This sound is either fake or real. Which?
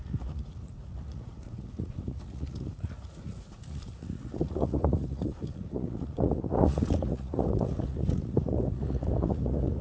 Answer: fake